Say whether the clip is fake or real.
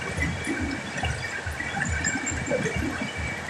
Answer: real